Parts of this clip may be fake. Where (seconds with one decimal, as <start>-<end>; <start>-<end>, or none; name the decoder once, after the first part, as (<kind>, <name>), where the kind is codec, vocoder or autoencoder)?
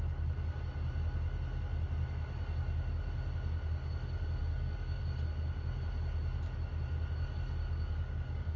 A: 4.4-5.0 (codec, DAC); 7.6-8.6